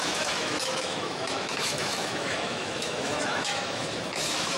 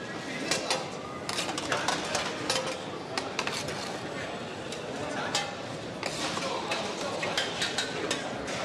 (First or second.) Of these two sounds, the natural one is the second